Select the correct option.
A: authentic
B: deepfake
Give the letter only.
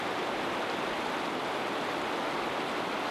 A